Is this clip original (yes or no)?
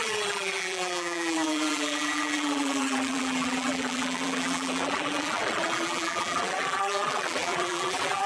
no